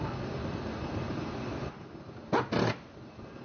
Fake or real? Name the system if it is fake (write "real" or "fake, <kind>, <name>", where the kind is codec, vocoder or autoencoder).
real